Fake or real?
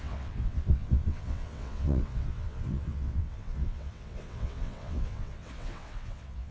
fake